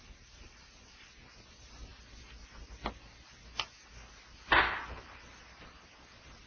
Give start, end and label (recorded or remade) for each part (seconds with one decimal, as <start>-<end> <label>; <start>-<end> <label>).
0.0-6.5 recorded